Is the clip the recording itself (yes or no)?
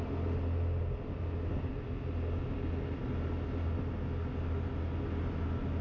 yes